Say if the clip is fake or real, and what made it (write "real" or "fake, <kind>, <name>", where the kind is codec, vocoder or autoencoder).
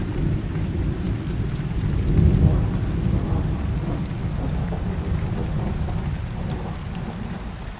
real